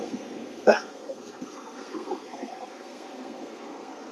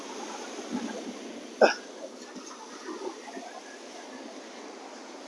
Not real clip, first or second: first